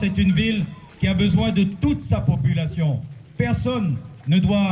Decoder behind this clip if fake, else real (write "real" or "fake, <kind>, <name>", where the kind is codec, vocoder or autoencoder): real